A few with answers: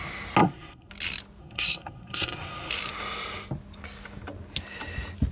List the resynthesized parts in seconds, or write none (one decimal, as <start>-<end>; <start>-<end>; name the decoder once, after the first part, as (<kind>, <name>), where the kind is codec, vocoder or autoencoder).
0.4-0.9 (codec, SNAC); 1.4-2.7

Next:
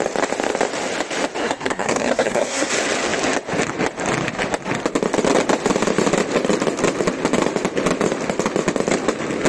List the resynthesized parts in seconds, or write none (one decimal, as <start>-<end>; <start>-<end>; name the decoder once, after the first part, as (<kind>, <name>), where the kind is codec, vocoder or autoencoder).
1.4-2.7 (codec, SNAC)

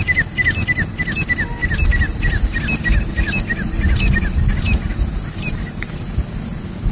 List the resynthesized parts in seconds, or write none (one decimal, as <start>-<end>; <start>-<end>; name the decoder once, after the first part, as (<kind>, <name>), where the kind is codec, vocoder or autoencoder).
none